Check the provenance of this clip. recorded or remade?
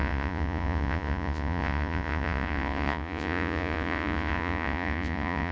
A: remade